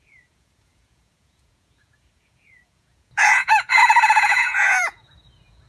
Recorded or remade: remade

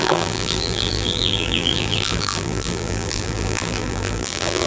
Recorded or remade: remade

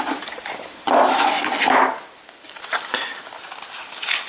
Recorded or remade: remade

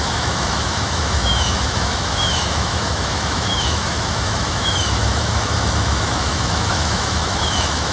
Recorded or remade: remade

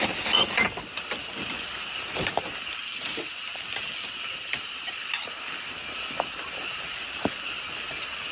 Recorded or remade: recorded